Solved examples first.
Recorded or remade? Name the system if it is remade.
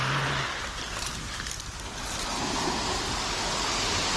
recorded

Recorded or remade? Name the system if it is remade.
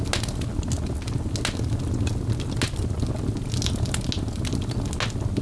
recorded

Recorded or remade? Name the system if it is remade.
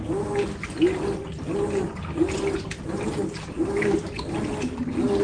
recorded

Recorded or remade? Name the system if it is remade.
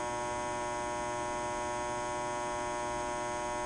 recorded